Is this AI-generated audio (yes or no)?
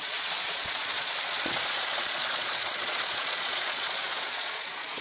yes